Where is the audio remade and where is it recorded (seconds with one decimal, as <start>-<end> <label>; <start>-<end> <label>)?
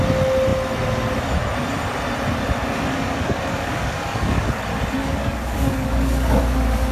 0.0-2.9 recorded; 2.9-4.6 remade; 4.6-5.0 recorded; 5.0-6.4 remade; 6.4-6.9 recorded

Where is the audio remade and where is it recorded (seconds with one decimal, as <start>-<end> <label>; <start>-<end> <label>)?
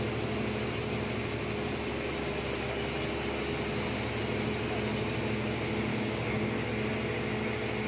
0.0-5.9 recorded; 5.9-6.7 remade; 6.7-7.9 recorded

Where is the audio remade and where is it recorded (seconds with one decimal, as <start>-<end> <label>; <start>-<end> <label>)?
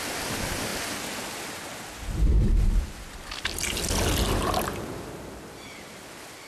0.0-6.5 recorded